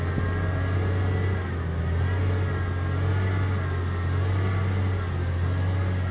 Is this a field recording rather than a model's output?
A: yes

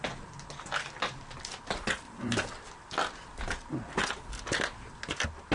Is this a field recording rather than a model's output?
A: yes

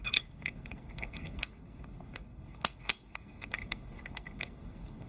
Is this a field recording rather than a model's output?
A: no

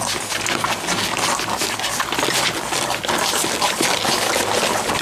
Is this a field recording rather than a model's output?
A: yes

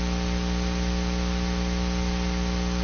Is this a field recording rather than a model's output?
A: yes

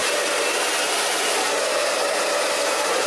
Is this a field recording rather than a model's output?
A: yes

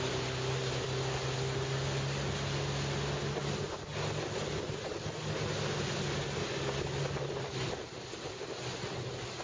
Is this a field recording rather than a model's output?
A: yes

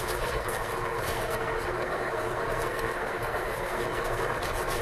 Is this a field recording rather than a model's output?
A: no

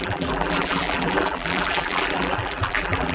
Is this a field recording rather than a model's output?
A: no